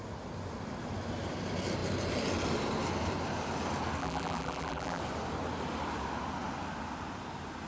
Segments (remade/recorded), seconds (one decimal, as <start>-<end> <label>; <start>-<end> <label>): 0.0-4.0 recorded; 4.0-5.0 remade; 5.0-7.7 recorded